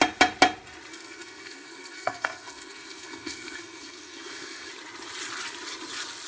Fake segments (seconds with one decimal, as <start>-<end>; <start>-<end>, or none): 0.9-4.7